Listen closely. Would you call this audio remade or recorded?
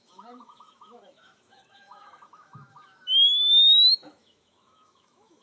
remade